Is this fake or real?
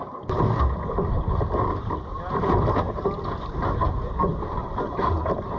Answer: real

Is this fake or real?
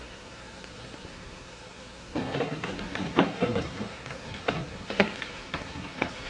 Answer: fake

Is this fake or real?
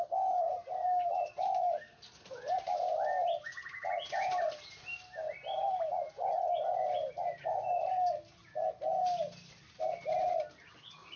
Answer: real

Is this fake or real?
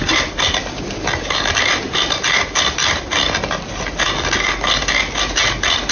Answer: real